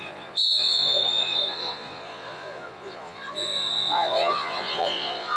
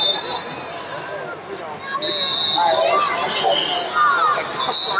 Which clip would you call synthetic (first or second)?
first